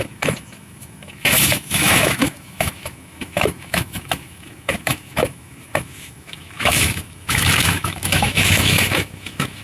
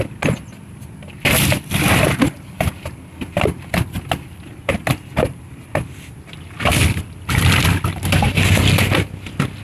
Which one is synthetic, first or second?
first